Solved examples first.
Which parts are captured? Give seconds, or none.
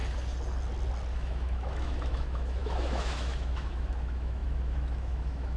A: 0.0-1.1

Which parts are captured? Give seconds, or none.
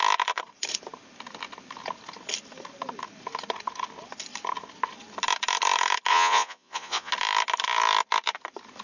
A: 0.0-6.1; 7.1-8.8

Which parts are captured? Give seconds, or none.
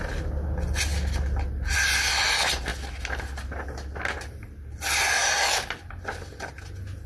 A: 0.0-7.1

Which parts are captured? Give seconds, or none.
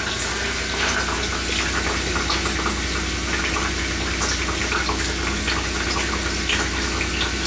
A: 0.0-4.6; 5.4-7.5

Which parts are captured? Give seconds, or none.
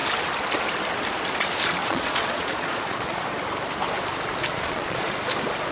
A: 0.0-1.8; 3.2-4.5; 5.1-5.7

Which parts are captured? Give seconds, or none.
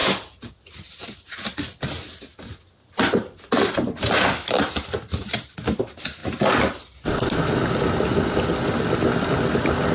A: 0.0-9.9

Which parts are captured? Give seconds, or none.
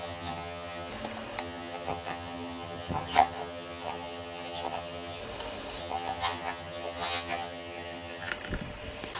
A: 0.9-1.4; 5.2-5.8; 8.3-9.2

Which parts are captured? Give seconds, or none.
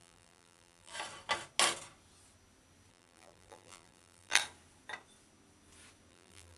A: 0.9-2.9; 4.4-6.1